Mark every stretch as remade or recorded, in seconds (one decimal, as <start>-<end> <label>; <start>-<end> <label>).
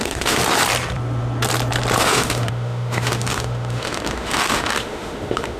0.0-0.4 remade; 0.4-2.0 recorded; 2.0-5.6 remade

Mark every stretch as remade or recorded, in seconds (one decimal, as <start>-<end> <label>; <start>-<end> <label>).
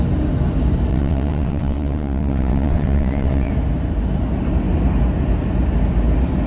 0.0-0.9 recorded; 0.9-3.5 remade; 3.5-6.5 recorded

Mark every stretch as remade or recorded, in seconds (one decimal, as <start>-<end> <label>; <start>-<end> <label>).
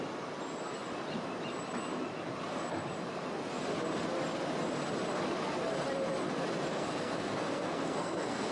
0.0-6.7 recorded; 6.7-8.5 remade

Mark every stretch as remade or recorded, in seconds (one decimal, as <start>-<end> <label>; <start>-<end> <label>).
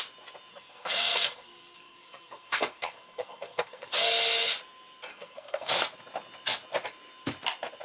0.0-0.5 recorded; 0.5-3.9 remade; 3.9-5.1 recorded; 5.1-5.7 remade; 5.7-7.8 recorded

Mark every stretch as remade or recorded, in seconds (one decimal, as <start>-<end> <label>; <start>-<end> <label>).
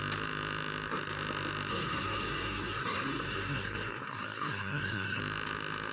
0.0-1.7 recorded; 1.7-5.2 remade; 5.2-5.9 recorded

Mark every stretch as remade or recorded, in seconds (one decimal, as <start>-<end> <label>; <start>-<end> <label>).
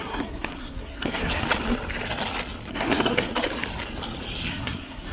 0.0-1.4 remade; 1.4-2.7 recorded; 2.7-3.3 remade; 3.3-4.5 recorded; 4.5-5.1 remade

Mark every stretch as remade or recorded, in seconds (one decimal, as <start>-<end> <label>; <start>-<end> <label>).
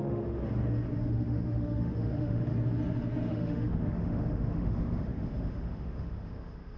0.0-0.4 remade; 0.4-1.1 recorded; 1.1-2.5 remade; 2.5-3.3 recorded; 3.3-6.8 remade